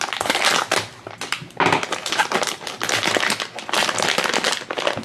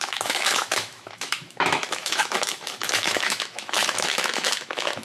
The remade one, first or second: second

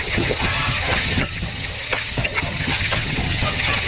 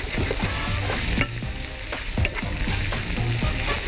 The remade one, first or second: first